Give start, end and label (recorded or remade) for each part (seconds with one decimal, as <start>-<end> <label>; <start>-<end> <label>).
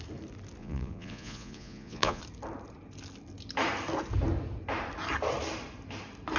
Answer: 0.0-0.6 recorded; 0.6-2.2 remade; 2.2-6.4 recorded